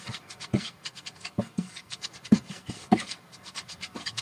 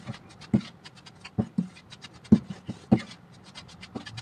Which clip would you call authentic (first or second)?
second